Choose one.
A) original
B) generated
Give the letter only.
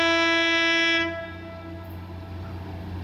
A